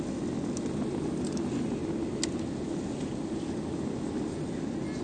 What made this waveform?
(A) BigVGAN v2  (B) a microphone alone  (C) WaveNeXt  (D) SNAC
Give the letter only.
B